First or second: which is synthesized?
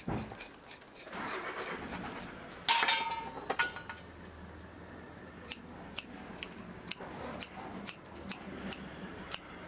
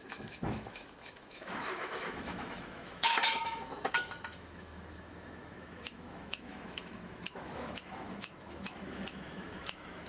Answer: second